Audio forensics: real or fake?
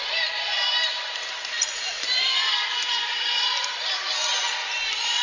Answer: fake